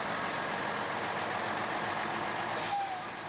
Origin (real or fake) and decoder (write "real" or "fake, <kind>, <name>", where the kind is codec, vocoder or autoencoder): real